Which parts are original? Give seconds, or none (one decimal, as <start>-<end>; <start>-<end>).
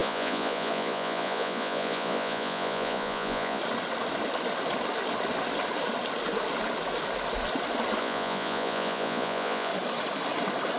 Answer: 3.6-8.0; 9.7-10.8